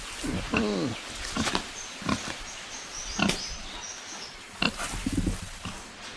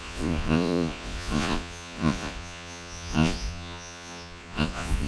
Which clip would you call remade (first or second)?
second